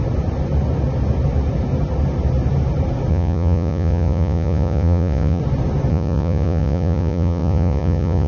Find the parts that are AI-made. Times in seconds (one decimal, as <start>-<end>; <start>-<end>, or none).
3.1-5.4; 5.9-8.3